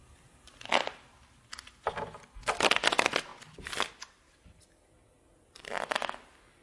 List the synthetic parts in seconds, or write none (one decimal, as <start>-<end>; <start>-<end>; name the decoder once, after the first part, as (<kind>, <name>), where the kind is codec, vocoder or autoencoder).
none